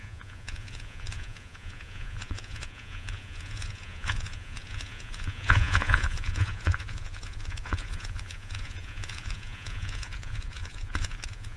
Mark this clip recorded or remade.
remade